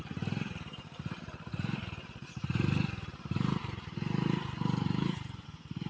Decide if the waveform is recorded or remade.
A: remade